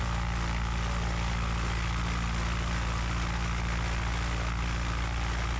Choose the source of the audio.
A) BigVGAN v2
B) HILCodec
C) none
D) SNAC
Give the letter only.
C